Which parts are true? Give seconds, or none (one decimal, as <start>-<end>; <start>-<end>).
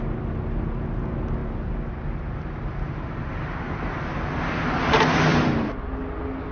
0.0-1.4; 3.3-5.3; 5.8-6.5